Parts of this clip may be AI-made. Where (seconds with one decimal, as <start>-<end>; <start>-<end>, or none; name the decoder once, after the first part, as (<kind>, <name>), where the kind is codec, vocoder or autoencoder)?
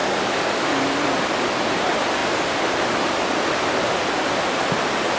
0.0-0.8 (codec, DAC)